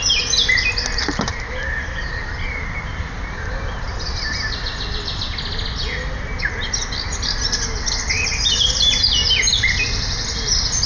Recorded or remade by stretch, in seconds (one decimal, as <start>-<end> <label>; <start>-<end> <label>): 0.0-1.3 recorded; 1.3-2.1 remade; 2.1-2.9 recorded; 2.9-4.2 remade; 4.2-10.9 recorded